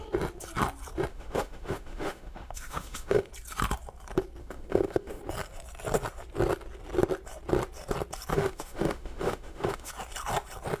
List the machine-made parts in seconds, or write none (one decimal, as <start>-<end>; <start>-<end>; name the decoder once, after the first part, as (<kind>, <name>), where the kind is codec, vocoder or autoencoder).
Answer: 1.1-3.3 (autoencoder, DAC-VAE); 4.4-5.2; 8.3-9.9